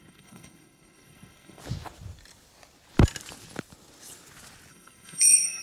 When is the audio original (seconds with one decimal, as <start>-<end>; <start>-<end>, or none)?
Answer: 1.6-4.7